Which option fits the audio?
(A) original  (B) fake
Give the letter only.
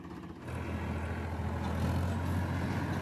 A